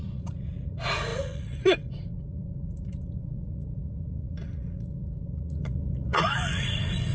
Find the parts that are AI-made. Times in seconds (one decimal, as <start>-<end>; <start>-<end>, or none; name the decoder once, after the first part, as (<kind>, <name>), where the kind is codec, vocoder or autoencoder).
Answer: 0.0-7.1 (vocoder, Vocos)